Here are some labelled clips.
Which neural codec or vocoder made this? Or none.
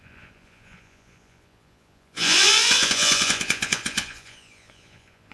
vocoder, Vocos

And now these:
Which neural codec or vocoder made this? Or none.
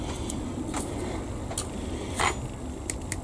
none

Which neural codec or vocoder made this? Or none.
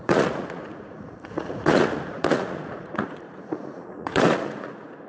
vocoder, Vocos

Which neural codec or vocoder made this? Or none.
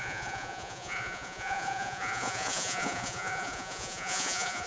vocoder, Vocos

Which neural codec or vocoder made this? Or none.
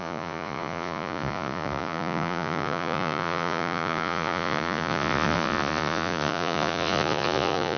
vocoder, Vocos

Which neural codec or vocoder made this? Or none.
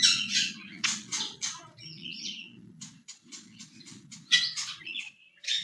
vocoder, Vocos